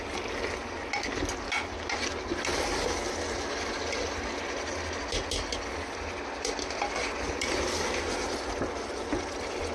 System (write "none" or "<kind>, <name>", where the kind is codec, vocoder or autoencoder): none